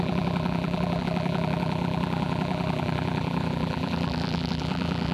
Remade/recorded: remade